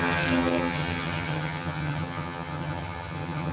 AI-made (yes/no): yes